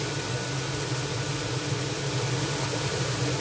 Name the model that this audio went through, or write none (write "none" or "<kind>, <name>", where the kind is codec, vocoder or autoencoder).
none